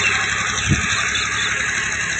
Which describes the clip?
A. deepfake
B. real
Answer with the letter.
B